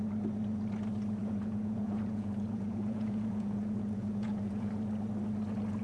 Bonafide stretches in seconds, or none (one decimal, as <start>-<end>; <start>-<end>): 0.0-1.2; 4.7-5.8